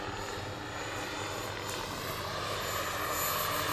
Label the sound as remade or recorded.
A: recorded